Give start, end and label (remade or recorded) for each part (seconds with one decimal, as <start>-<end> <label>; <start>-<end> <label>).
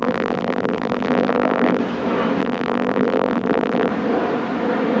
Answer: 0.0-1.8 remade; 1.8-2.4 recorded; 2.4-3.9 remade; 3.9-5.0 recorded